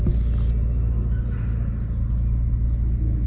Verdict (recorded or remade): recorded